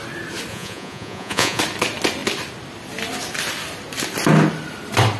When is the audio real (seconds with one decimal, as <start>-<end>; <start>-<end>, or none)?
0.0-0.5; 1.6-5.2